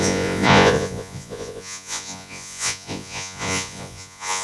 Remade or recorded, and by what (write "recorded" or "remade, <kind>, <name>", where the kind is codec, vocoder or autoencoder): remade, vocoder, Vocos